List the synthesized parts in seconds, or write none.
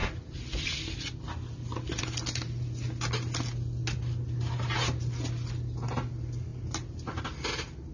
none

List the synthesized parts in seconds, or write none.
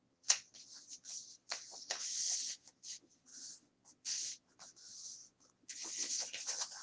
0.0-6.8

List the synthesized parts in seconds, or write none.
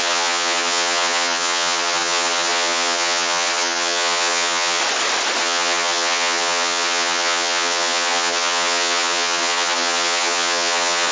0.0-4.8; 5.4-11.1